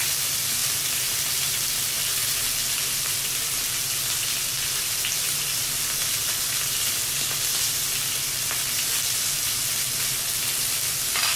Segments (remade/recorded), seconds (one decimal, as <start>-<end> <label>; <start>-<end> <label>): 0.0-0.6 recorded; 0.6-2.0 remade; 2.0-11.4 recorded